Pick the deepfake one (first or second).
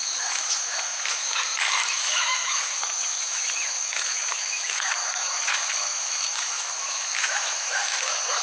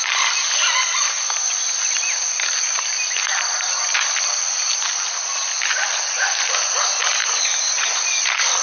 first